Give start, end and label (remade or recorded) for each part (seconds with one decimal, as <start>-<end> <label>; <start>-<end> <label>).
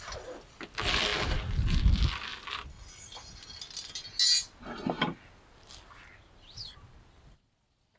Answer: 0.0-8.0 recorded